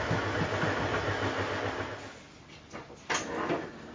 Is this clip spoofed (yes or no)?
no